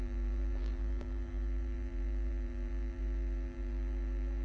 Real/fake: fake